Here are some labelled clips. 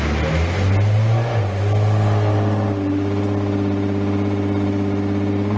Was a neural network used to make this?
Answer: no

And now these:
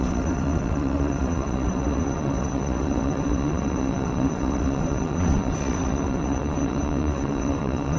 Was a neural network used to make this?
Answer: yes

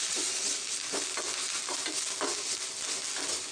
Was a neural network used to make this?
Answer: no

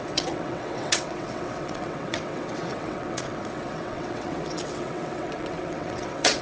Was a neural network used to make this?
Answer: yes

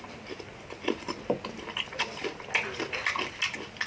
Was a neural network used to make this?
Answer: no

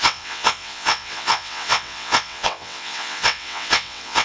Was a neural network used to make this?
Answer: yes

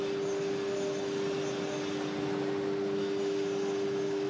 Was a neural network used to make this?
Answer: no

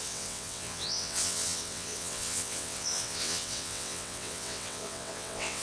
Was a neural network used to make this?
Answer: yes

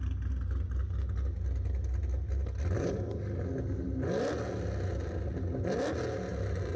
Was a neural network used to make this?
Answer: no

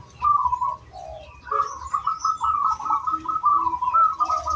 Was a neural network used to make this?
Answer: no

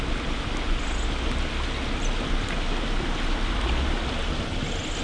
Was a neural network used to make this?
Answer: no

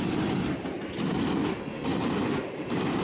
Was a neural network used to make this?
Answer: no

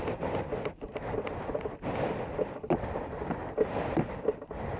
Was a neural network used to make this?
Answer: no